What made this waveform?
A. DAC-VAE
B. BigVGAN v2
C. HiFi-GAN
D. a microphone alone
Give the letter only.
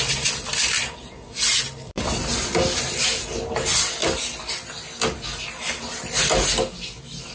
D